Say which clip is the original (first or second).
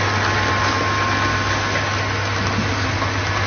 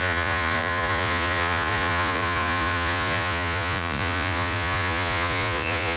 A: first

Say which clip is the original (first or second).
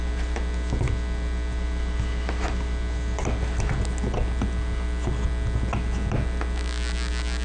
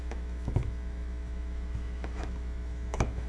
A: first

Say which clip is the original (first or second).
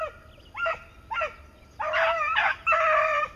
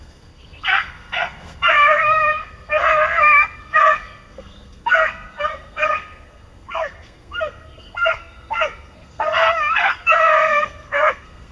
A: first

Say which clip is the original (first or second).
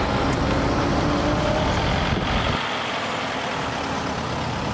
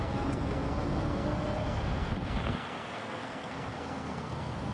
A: first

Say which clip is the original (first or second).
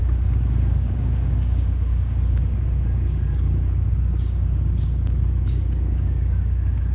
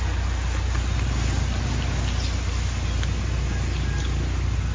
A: second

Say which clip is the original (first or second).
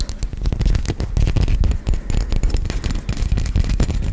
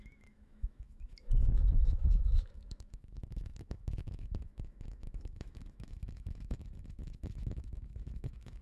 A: first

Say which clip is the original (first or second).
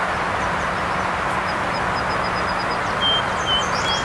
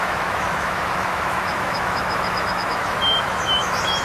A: first